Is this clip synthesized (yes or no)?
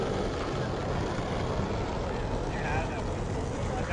no